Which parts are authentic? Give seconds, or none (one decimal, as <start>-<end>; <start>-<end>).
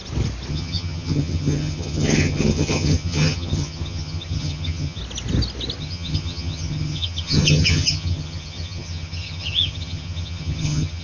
0.0-0.5; 5.0-5.8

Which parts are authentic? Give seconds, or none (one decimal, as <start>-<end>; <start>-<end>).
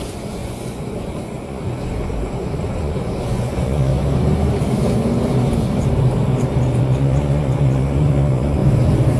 3.9-6.8; 8.6-9.2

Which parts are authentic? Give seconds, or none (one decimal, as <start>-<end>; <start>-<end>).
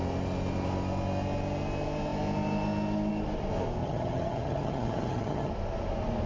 0.0-3.8; 5.5-6.3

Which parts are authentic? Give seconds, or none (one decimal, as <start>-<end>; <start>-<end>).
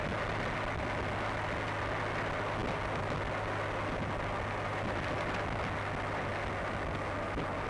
0.0-7.7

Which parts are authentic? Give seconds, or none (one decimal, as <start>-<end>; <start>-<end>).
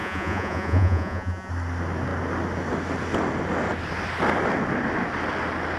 1.5-5.8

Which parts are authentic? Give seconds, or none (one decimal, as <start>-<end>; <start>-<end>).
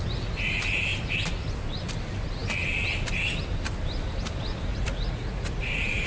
0.0-4.7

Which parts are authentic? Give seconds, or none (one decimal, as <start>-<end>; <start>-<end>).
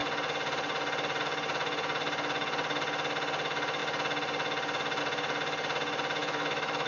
0.0-6.2